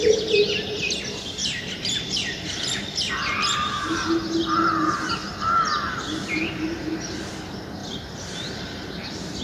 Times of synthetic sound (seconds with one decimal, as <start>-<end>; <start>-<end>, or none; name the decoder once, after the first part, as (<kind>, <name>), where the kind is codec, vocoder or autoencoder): 1.4-3.1 (vocoder, BigVGAN v2); 7.8-9.4